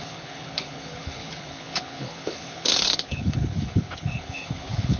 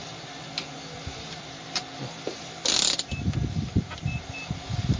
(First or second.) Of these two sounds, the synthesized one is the first